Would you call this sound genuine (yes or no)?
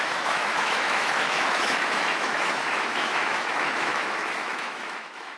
no